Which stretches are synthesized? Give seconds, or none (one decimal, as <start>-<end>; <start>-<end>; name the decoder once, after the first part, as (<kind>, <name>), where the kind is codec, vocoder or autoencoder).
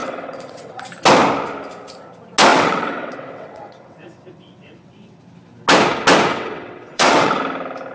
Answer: 0.0-0.8 (vocoder, WaveNeXt); 2.5-5.2; 6.3-7.4